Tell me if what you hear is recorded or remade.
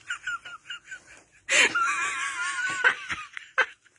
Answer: recorded